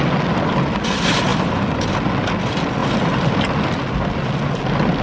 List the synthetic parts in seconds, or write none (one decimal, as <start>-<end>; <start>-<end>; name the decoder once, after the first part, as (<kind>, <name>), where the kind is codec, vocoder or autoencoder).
none